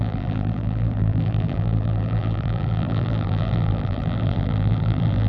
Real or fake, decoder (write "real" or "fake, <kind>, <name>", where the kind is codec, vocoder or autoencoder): fake, vocoder, BigVGAN v2